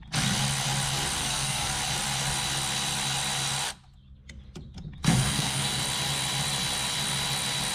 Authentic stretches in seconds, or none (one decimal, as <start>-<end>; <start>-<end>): 0.0-1.2; 1.8-5.0; 5.8-7.7